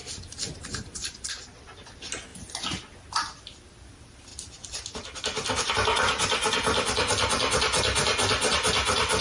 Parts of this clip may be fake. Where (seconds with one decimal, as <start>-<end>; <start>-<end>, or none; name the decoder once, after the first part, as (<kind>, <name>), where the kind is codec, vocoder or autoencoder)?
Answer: 0.0-1.3 (vocoder, BigVGAN v2); 4.3-5.7